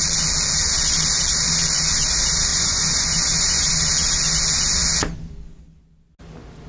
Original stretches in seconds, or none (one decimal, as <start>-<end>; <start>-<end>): 0.0-2.5; 3.7-6.7